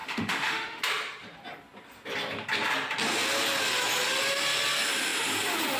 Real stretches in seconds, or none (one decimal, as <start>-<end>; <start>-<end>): 0.8-5.8